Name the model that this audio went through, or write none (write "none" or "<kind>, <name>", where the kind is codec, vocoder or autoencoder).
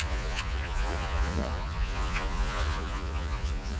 vocoder, Vocos